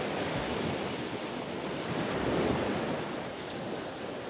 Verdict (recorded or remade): recorded